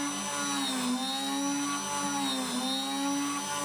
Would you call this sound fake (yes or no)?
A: no